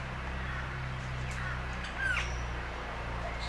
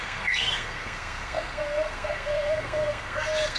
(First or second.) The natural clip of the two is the first